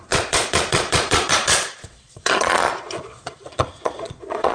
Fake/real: fake